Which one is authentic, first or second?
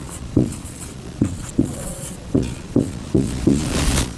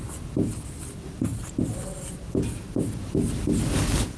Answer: second